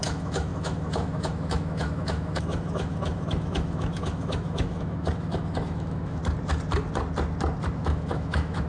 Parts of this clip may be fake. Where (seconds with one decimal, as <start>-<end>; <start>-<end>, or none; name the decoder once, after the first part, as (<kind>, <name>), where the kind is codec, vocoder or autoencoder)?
0.0-6.2 (autoencoder, DAC-VAE); 7.7-8.7